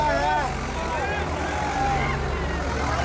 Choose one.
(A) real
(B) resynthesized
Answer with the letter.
A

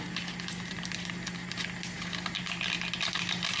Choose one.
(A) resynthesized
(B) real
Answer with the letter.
B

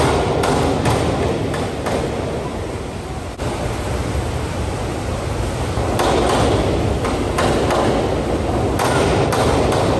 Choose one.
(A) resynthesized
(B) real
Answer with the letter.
B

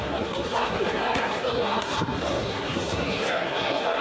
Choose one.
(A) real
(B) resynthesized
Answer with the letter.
B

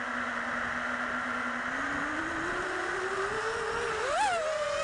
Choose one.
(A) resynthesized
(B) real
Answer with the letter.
B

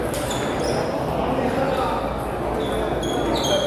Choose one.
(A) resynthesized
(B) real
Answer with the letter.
B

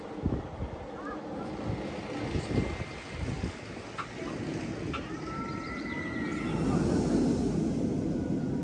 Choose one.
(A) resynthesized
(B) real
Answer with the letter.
B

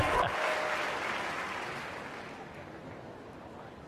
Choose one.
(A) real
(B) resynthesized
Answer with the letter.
A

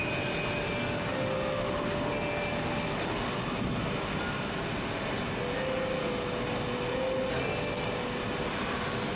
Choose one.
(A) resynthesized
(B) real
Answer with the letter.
B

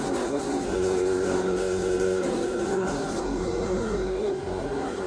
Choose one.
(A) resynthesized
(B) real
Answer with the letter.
A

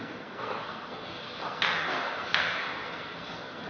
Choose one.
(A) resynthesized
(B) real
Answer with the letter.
A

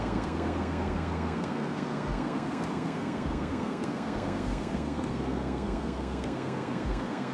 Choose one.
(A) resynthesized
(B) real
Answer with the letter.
A